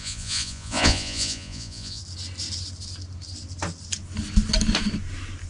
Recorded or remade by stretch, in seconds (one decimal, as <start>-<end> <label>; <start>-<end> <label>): 0.0-2.0 remade; 2.0-5.5 recorded